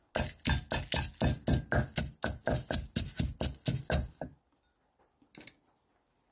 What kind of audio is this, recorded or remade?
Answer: recorded